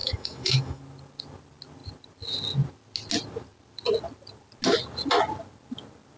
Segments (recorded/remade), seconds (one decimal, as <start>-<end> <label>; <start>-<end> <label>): 0.0-0.8 remade; 0.8-6.2 recorded